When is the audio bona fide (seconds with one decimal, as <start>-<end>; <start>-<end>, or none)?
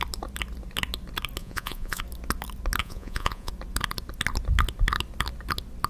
0.0-1.4; 2.0-2.8; 3.5-5.9